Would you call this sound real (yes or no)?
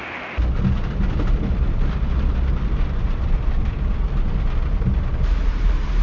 yes